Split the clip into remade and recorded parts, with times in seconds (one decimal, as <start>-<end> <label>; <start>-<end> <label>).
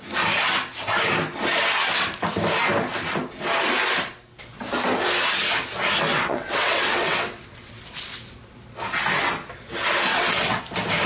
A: 0.0-6.1 recorded; 6.1-7.8 remade; 7.8-10.1 recorded; 10.1-10.6 remade; 10.6-11.1 recorded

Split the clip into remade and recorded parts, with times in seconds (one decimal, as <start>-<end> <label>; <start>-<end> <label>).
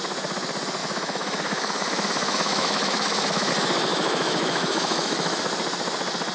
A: 0.0-0.8 recorded; 0.8-3.5 remade; 3.5-3.9 recorded; 3.9-5.4 remade; 5.4-6.3 recorded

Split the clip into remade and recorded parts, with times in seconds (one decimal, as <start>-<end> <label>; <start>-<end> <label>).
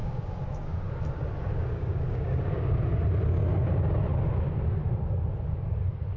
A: 0.0-1.0 remade; 1.0-1.4 recorded; 1.4-2.8 remade; 2.8-6.2 recorded